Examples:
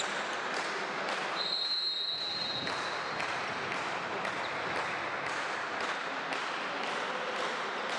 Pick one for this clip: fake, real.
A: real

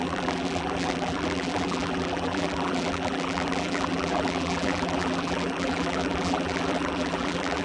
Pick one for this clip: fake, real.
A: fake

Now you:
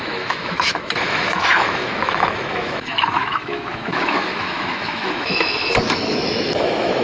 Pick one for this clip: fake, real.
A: fake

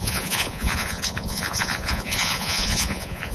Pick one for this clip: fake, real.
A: fake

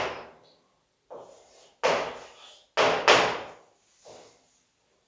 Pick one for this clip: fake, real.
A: real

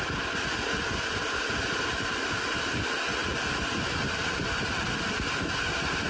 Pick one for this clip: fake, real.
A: real